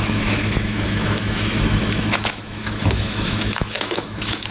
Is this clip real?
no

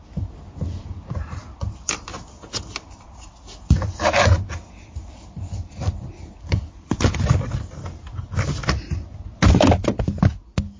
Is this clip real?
yes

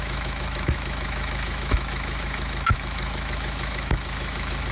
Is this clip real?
no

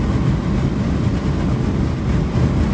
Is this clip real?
yes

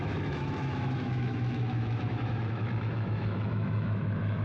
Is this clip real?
no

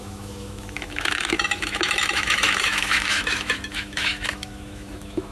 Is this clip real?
no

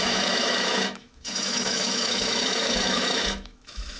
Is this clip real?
no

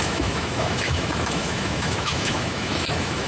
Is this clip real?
no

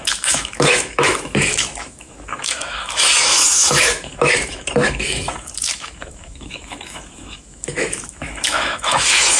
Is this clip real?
no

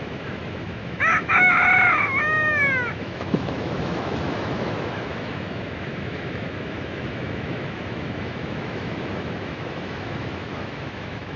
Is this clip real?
no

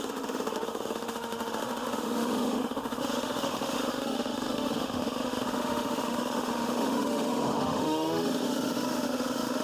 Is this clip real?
no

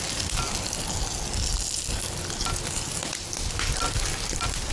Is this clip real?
yes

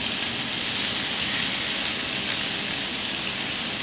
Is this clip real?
yes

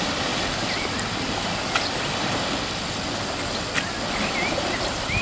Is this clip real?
yes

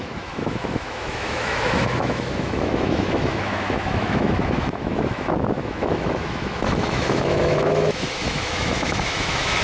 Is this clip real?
no